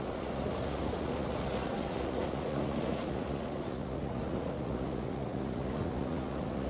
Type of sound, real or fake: fake